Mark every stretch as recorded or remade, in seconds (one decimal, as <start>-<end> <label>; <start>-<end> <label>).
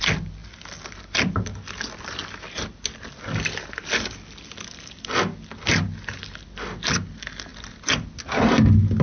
0.0-9.0 recorded